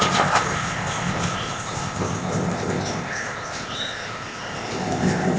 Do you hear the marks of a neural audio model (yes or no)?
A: yes